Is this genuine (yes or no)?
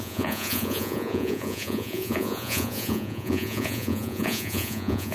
no